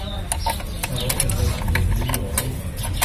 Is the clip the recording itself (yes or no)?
yes